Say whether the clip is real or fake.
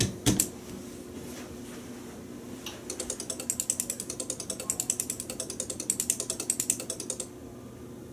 real